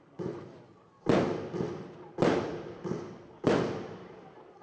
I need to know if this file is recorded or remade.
recorded